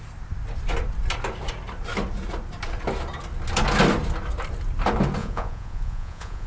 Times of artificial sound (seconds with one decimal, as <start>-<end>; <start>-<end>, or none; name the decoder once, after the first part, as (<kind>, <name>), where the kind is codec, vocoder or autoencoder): 5.2-6.5 (vocoder, Vocos)